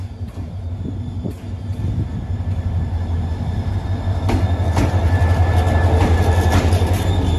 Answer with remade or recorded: recorded